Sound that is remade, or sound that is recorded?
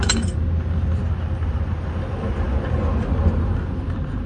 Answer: recorded